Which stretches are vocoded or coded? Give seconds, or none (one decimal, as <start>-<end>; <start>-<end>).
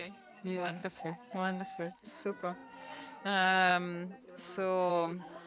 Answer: 0.0-3.7; 4.9-5.5